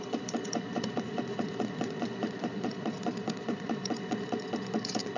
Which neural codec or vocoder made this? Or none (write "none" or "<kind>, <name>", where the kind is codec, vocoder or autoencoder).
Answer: vocoder, Vocos